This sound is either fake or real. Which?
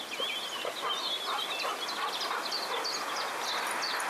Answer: real